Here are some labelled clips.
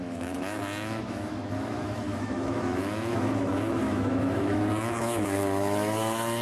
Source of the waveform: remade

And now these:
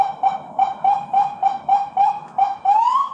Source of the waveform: remade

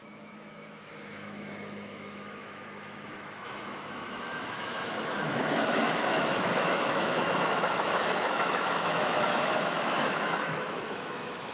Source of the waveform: remade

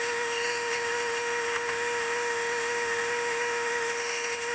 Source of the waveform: remade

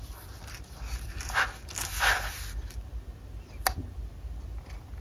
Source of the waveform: recorded